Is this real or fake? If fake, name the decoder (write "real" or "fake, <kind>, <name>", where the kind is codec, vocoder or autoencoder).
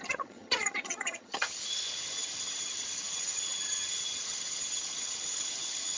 fake, vocoder, HiFi-GAN